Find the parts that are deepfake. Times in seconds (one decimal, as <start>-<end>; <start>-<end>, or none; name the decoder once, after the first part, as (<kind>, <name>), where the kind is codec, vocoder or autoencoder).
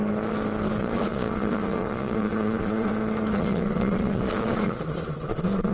0.8-2.9 (vocoder, Vocos); 3.3-5.7